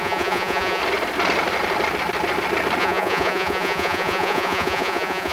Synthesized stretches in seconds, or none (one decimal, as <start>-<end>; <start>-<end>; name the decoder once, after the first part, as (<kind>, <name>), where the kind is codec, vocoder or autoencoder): 0.0-0.8 (vocoder, Vocos); 2.8-5.3